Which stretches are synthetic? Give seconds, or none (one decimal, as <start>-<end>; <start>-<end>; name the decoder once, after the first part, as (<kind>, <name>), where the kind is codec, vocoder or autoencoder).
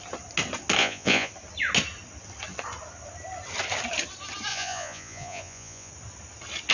0.8-1.3 (vocoder, Vocos); 4.5-5.9